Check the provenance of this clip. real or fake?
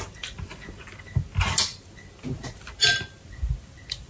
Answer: real